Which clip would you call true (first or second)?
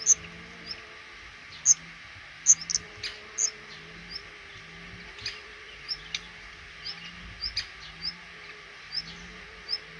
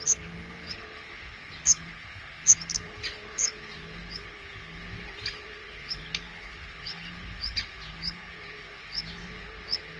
first